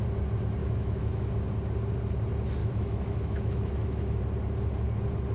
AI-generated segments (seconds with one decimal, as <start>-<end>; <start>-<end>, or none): 0.6-1.3; 2.6-4.2